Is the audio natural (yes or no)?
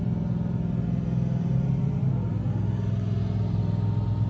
yes